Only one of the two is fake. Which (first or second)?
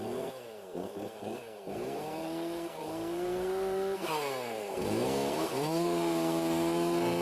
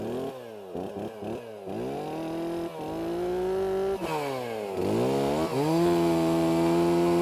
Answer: first